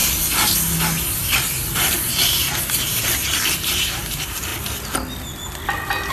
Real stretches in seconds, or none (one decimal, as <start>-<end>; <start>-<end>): 0.0-1.9; 4.5-6.1